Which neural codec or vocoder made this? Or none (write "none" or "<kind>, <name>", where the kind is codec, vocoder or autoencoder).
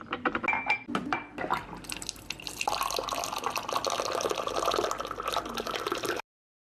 none